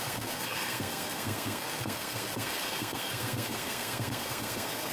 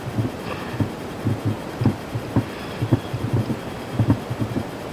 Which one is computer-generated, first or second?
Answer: first